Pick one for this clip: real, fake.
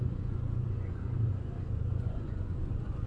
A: fake